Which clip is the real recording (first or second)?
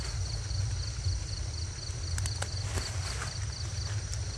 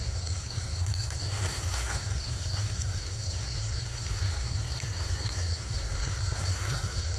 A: first